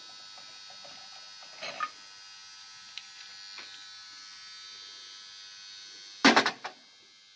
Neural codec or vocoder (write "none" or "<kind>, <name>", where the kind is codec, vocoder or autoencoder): none